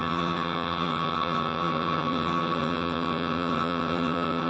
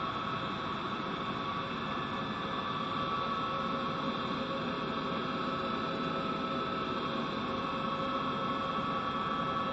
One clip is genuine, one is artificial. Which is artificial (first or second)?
first